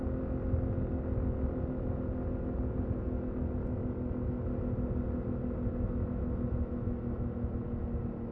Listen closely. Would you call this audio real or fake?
real